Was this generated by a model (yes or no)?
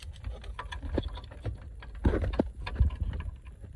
no